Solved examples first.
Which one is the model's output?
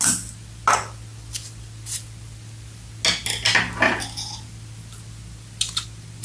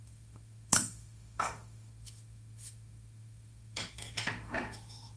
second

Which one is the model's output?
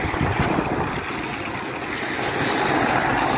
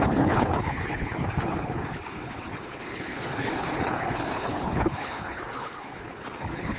second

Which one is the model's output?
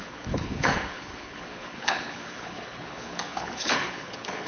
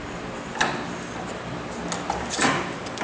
first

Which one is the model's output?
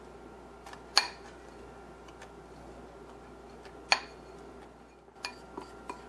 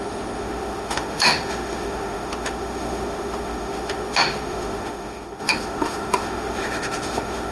second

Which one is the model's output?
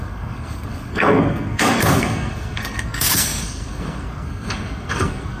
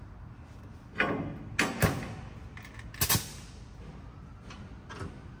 first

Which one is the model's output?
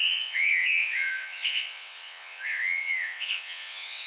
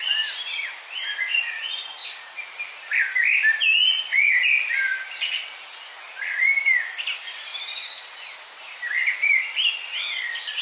first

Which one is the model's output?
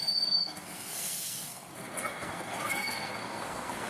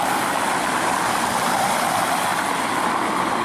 first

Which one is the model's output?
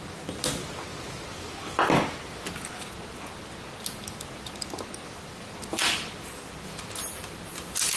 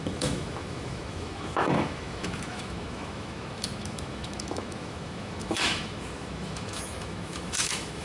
second